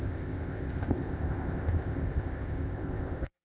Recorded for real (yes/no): no